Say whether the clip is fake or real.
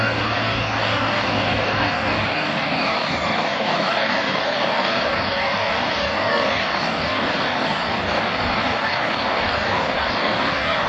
fake